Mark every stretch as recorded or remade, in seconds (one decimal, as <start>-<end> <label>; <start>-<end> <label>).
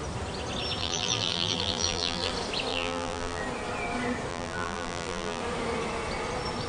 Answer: 0.0-0.8 recorded; 0.8-2.3 remade; 2.3-2.7 recorded; 2.7-3.4 remade; 3.4-4.3 recorded; 4.3-5.4 remade; 5.4-6.7 recorded